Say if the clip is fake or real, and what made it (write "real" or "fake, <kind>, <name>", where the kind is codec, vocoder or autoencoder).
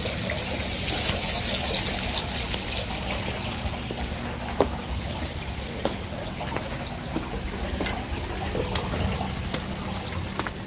real